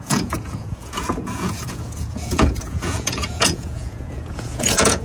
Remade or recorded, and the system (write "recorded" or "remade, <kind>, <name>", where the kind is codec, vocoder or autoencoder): remade, vocoder, Vocos